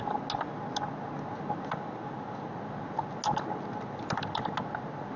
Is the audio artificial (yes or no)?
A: no